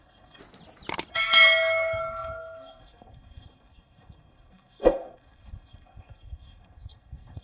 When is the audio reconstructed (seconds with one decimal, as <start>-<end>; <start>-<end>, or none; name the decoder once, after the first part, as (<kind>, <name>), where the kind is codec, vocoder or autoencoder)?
0.0-0.4 (codec, SNAC); 1.1-7.4